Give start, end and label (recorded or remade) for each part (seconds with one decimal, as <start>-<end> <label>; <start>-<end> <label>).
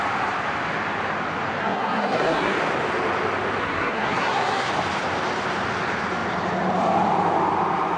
0.0-1.6 recorded; 1.6-2.5 remade; 2.5-3.6 recorded; 3.6-4.7 remade; 4.7-8.0 recorded